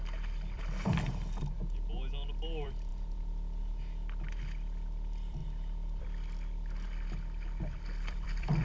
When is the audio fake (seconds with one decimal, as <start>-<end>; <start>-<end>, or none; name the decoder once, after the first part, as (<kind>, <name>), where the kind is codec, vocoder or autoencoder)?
0.0-2.9 (vocoder, BigVGAN v2); 4.4-8.6